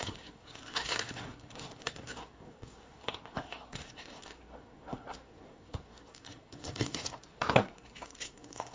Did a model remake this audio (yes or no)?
yes